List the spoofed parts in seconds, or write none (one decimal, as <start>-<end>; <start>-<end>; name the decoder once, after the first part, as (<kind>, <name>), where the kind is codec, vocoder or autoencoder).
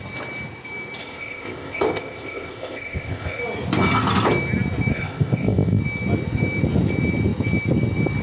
1.0-3.4 (codec, ZipCodec); 4.9-5.8